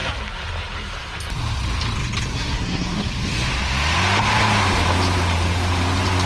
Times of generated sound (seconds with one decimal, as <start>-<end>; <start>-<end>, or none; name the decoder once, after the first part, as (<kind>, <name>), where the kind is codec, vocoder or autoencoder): 2.3-3.1 (codec, SNAC)